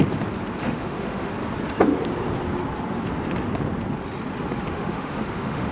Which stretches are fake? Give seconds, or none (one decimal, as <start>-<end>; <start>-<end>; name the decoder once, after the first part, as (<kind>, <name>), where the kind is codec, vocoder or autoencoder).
0.6-1.3 (autoencoder, DAC-VAE); 4.7-5.7